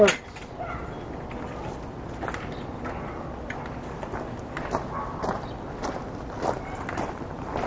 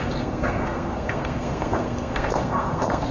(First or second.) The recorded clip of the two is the first